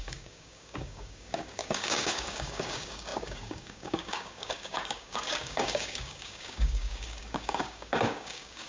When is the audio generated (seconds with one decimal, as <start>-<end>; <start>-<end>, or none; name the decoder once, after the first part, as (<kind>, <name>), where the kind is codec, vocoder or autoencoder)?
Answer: 0.0-8.7 (codec, DAC)